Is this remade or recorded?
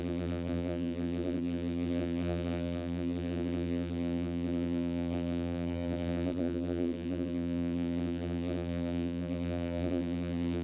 remade